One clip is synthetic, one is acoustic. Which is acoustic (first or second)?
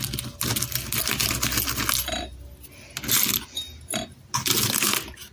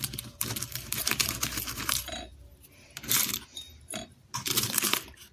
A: first